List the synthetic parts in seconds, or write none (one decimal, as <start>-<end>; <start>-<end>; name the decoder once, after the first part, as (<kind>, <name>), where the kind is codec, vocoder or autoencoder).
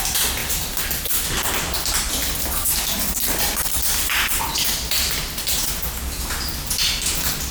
0.4-4.4 (vocoder, BigVGAN v2)